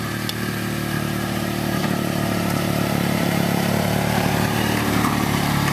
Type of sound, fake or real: fake